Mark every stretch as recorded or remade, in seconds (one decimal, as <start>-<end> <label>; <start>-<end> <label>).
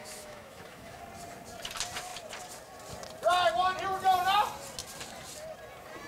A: 0.0-1.0 remade; 1.0-6.1 recorded